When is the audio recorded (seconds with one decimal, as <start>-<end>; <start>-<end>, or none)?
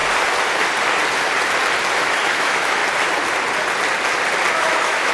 0.0-2.0; 2.8-4.5